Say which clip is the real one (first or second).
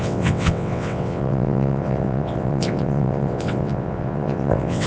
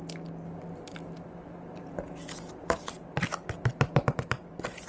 second